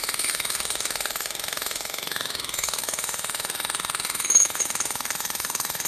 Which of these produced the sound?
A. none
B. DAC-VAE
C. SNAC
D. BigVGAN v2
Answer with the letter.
B